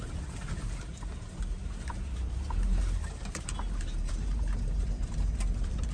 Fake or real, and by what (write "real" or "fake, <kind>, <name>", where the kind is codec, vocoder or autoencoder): fake, vocoder, BigVGAN v2